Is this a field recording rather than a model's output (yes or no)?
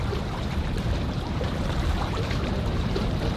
no